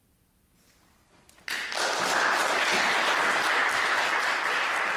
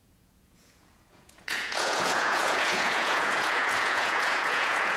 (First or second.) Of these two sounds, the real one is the first